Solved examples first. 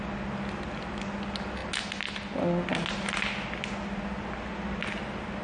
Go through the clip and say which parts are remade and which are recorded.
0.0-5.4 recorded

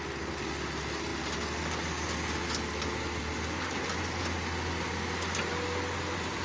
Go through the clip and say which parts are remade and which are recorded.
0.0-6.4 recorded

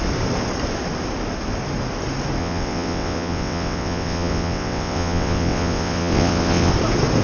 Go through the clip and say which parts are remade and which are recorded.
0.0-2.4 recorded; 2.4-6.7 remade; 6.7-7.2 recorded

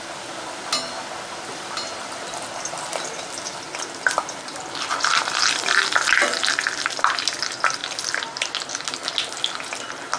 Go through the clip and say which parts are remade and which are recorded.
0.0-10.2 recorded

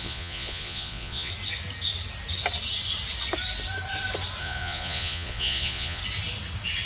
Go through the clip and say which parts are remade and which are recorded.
0.0-1.3 remade; 1.3-4.4 recorded; 4.4-6.0 remade; 6.0-6.9 recorded